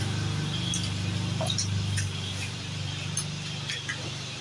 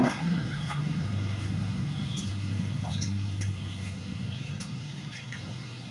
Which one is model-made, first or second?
second